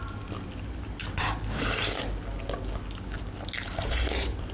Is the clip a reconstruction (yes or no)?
no